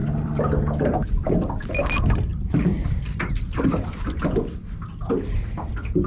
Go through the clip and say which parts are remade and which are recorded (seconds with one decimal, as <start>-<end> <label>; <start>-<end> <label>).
0.0-1.7 remade; 1.7-2.3 recorded; 2.3-2.9 remade; 2.9-6.1 recorded